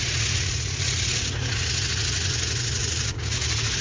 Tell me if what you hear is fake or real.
fake